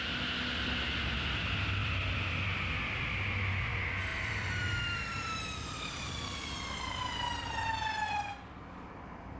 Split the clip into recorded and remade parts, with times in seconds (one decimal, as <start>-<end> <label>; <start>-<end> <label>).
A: 0.0-1.8 recorded; 1.8-2.7 remade; 2.7-4.1 recorded; 4.1-5.9 remade; 5.9-8.3 recorded; 8.3-9.4 remade